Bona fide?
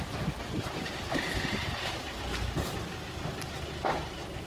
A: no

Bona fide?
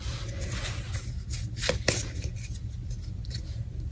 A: yes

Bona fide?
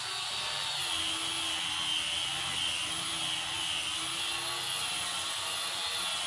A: yes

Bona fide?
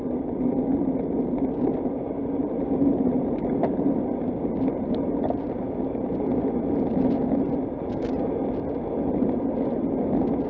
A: yes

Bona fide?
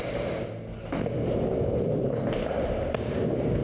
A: yes